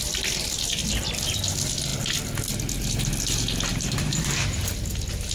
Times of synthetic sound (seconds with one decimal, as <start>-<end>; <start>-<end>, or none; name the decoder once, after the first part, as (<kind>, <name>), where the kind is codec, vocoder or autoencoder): 3.7-4.7 (vocoder, BigVGAN v2)